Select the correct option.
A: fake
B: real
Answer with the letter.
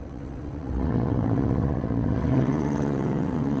A